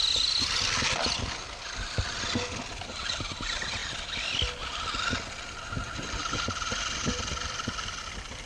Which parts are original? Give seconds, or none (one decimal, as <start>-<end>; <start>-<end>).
0.0-8.5